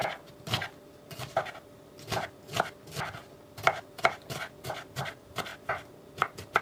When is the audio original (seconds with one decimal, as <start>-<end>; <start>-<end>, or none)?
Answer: 0.0-4.0; 5.5-6.6